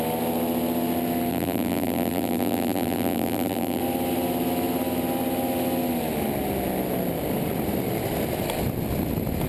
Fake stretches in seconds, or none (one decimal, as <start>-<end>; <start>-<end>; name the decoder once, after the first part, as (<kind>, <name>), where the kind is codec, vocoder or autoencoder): 1.3-3.8 (vocoder, BigVGAN v2)